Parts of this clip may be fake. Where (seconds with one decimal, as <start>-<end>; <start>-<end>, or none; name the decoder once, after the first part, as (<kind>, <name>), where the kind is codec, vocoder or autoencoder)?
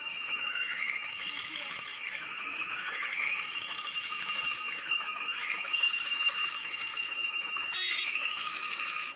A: 0.0-9.2 (autoencoder, DAC-VAE)